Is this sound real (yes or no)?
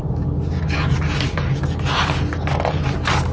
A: yes